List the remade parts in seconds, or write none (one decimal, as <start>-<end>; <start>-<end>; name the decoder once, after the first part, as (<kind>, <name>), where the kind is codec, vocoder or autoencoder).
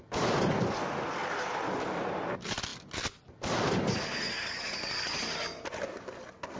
none